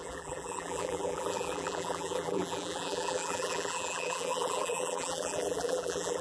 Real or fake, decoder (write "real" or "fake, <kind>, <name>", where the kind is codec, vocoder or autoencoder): fake, vocoder, BigVGAN v2